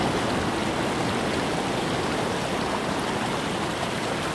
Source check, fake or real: real